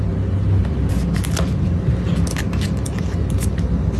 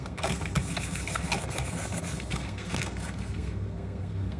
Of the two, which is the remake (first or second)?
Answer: second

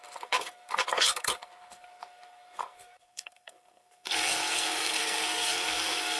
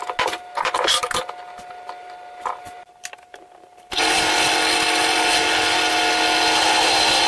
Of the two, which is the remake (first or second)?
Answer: first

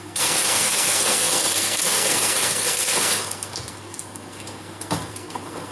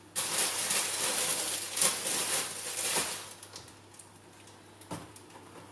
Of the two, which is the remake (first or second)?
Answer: first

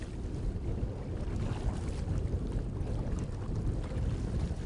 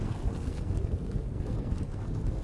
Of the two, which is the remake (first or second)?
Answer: second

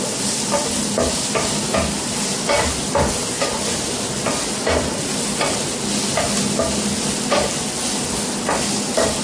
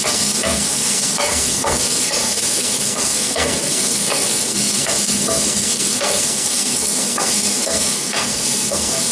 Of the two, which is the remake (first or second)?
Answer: second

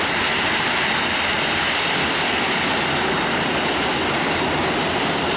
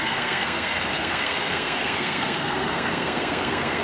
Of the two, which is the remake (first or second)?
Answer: second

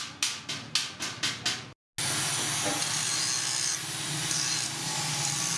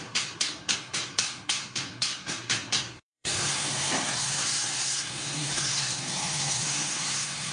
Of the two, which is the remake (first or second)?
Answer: second